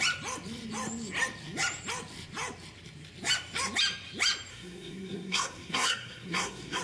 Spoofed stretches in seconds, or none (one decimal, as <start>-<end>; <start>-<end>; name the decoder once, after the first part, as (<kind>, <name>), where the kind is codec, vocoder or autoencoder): 4.5-6.8 (codec, SNAC)